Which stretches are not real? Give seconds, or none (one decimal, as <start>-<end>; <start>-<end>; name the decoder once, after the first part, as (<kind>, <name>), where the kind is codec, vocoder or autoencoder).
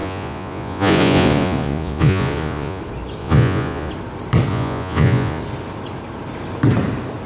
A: 0.0-2.8 (vocoder, Vocos); 3.2-3.9; 4.5-5.4